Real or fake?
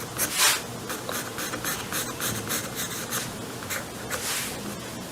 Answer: real